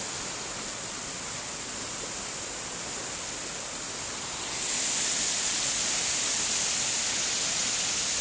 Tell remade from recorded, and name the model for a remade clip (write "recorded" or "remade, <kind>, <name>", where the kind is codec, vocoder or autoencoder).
recorded